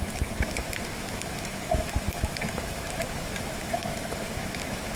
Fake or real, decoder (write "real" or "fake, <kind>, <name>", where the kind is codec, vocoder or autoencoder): fake, autoencoder, DAC-VAE